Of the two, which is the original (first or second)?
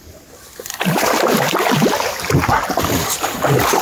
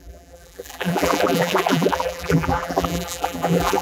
first